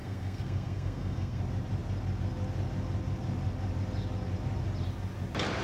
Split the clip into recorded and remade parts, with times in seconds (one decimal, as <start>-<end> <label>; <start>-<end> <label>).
0.0-1.4 remade; 1.4-5.6 recorded